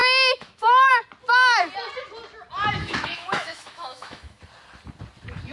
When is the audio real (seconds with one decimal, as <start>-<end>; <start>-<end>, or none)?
0.9-2.8; 4.4-5.5